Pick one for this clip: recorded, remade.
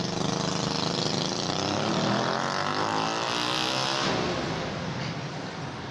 recorded